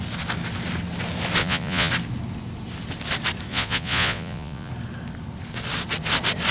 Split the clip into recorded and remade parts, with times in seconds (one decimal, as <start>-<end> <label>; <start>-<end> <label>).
0.0-1.4 recorded; 1.4-1.9 remade; 1.9-3.5 recorded; 3.5-4.7 remade; 4.7-6.5 recorded